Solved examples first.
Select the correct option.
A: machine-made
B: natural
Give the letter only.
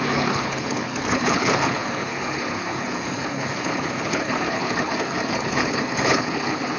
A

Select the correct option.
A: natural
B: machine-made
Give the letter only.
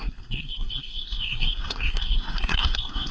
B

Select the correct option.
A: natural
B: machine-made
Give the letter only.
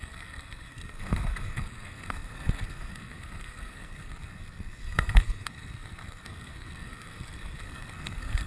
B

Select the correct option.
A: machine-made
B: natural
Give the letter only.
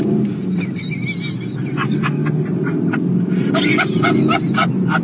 B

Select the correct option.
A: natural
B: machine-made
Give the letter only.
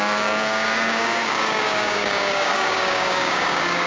B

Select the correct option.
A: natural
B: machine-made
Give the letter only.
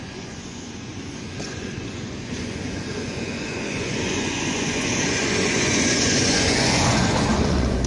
B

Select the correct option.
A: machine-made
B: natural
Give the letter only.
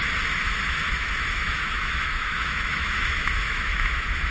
A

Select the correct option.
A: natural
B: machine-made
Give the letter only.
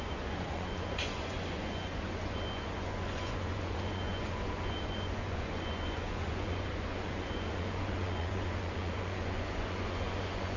B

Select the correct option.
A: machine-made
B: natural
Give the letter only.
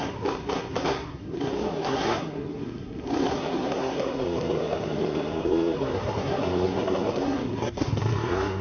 A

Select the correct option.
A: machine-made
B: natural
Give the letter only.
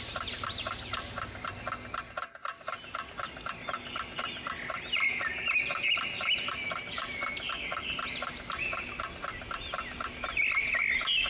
B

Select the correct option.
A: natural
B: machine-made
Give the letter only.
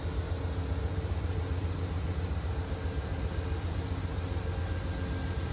A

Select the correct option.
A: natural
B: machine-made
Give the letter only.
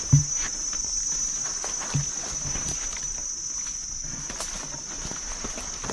A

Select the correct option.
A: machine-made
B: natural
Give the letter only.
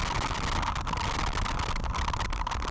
B